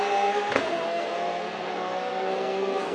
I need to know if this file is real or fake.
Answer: fake